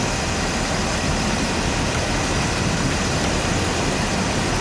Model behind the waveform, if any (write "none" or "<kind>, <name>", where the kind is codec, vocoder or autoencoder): none